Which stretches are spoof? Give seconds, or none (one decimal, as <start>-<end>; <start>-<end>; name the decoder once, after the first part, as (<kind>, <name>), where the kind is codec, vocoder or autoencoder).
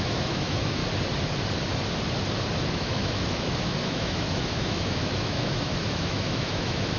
0.0-0.8 (autoencoder, DAC-VAE); 2.7-7.0